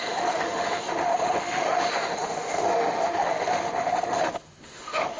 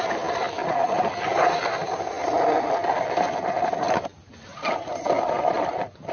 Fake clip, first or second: first